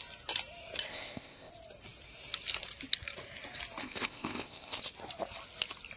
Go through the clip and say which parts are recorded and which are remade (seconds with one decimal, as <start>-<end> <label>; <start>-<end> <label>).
0.0-0.9 recorded; 0.9-1.5 remade; 1.5-3.8 recorded; 3.8-4.8 remade; 4.8-6.0 recorded